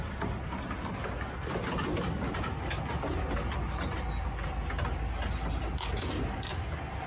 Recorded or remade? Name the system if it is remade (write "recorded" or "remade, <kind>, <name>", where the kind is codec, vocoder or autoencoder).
recorded